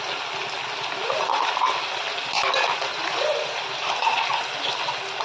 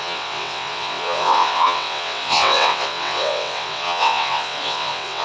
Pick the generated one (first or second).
second